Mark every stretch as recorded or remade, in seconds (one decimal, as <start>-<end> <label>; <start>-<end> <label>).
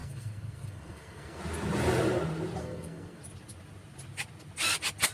0.0-1.4 remade; 1.4-2.6 recorded; 2.6-3.2 remade; 3.2-5.1 recorded